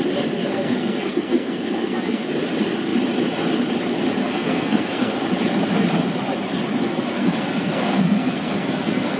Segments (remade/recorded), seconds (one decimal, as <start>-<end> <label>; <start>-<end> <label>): 0.0-0.4 recorded; 0.4-2.3 remade; 2.3-4.2 recorded; 4.2-5.1 remade; 5.1-6.8 recorded; 6.8-9.2 remade